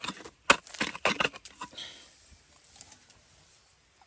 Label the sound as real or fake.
real